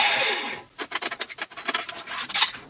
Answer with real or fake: real